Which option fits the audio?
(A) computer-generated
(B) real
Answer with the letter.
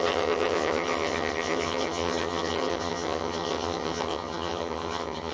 A